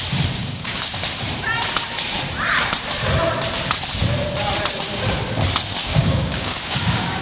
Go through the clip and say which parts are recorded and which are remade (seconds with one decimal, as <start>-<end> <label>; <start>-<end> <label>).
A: 0.0-0.4 recorded; 0.4-1.0 remade; 1.0-5.8 recorded; 5.8-7.2 remade

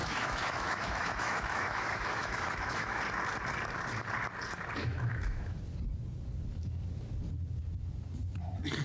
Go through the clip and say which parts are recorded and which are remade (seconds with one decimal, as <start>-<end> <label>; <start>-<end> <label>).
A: 0.0-3.0 remade; 3.0-4.8 recorded; 4.8-5.6 remade; 5.6-8.8 recorded

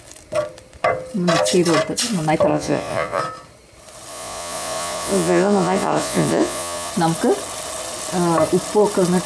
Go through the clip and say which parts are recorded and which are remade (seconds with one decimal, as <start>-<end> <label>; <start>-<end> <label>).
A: 0.0-2.5 recorded; 2.5-3.2 remade; 3.2-4.1 recorded; 4.1-6.9 remade; 6.9-9.3 recorded